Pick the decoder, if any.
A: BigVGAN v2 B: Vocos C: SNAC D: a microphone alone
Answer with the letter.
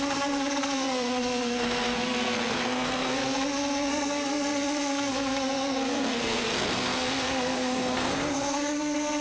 C